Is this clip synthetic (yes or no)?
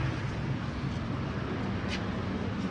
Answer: no